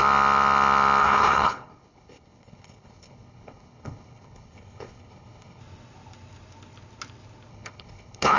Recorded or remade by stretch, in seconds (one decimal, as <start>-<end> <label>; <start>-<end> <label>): 0.0-1.0 recorded; 1.0-5.6 remade; 5.6-7.5 recorded; 7.5-8.4 remade